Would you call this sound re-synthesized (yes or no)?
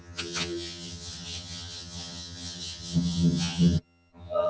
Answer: yes